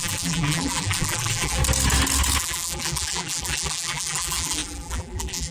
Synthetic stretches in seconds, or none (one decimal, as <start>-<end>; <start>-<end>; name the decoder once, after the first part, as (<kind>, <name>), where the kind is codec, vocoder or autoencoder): 0.0-1.6 (vocoder, BigVGAN v2); 2.4-5.5